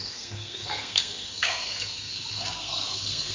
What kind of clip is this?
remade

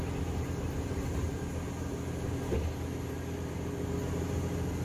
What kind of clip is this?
recorded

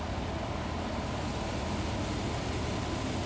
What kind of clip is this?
recorded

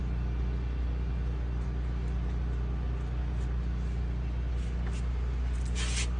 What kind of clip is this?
recorded